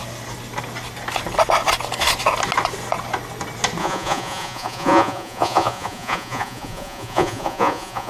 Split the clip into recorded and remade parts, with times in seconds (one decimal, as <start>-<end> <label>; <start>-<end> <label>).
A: 0.0-3.8 recorded; 3.8-8.1 remade